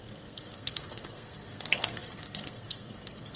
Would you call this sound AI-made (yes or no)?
yes